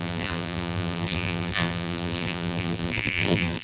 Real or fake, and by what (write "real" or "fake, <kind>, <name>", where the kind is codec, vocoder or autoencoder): fake, vocoder, BigVGAN v2